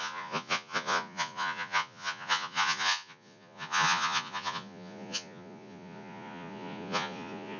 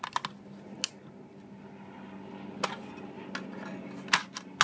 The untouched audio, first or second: second